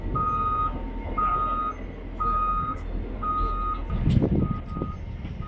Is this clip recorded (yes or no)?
yes